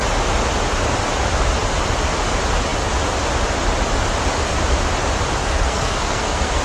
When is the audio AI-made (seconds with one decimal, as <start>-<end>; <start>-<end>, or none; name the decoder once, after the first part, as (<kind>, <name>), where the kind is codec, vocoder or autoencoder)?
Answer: 5.4-6.6 (codec, SNAC)